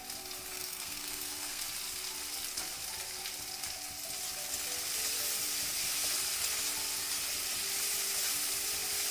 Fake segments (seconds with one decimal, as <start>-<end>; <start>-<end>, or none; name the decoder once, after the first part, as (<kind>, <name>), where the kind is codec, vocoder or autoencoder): 0.5-1.6 (codec, SNAC)